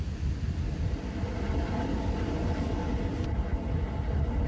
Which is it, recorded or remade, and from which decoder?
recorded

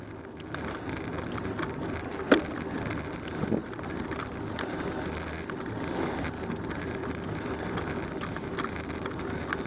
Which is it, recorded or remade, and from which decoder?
recorded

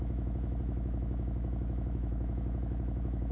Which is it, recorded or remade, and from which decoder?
remade, autoencoder, DAC-VAE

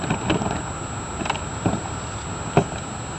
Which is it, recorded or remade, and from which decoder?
recorded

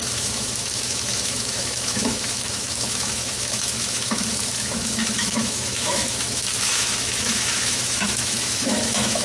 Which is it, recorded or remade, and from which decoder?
remade, autoencoder, DAC-VAE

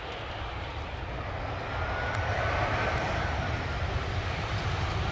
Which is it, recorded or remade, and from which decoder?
recorded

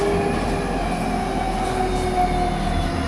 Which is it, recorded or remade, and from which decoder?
recorded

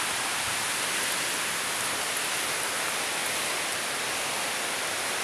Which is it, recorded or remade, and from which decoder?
recorded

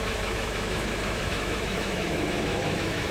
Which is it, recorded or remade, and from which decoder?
remade, autoencoder, DAC-VAE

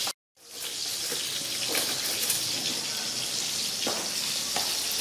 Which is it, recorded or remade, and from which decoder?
recorded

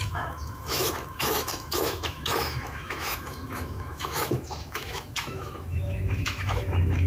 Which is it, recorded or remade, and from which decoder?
remade, autoencoder, DAC-VAE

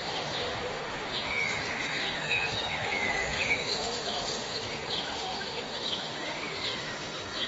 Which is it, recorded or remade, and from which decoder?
remade, autoencoder, DAC-VAE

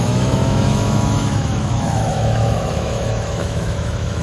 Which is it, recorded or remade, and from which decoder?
remade, autoencoder, DAC-VAE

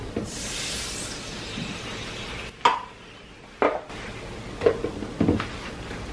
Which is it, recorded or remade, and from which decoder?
recorded